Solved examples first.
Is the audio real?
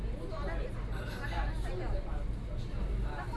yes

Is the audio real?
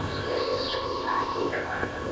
no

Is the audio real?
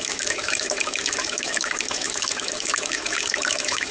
no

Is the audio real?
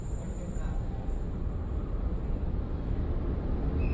no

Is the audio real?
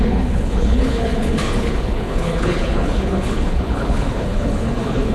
no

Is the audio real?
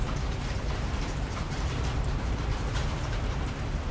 no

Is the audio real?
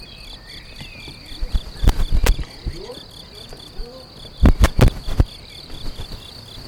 yes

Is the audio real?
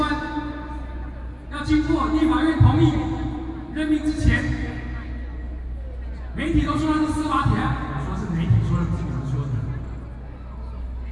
yes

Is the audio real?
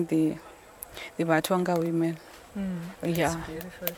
no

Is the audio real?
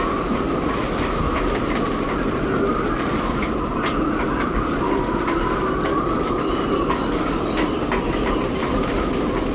yes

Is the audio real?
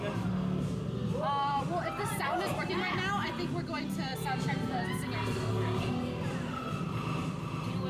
yes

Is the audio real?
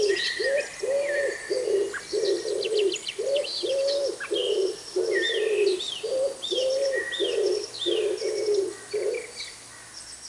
yes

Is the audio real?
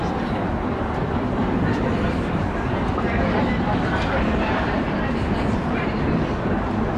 yes